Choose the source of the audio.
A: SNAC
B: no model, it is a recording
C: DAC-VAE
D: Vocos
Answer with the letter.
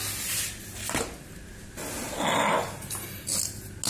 B